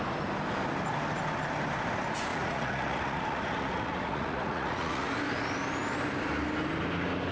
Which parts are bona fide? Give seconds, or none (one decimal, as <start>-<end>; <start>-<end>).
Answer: 0.0-2.3; 5.1-7.3